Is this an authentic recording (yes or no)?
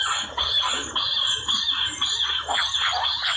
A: yes